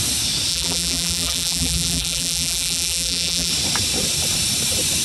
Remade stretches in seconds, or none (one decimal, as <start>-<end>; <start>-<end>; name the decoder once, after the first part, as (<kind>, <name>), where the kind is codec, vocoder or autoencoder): 0.5-3.5 (vocoder, BigVGAN v2)